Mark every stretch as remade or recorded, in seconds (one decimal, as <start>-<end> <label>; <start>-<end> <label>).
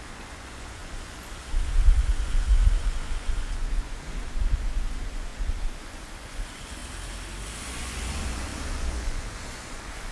0.0-6.8 remade; 6.8-7.6 recorded; 7.6-10.1 remade